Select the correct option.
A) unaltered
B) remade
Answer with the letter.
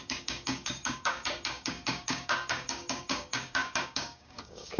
B